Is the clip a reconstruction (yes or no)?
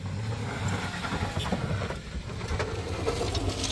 no